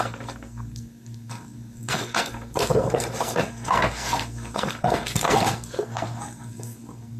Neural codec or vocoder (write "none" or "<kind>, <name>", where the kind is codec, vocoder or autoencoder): codec, SNAC